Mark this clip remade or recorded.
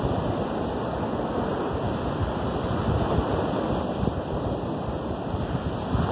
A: recorded